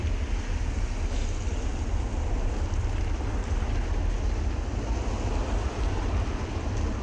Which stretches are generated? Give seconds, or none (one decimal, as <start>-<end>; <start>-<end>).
1.7-2.1; 5.4-7.0